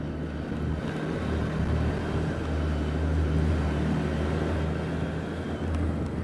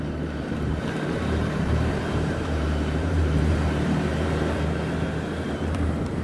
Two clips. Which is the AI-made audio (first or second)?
second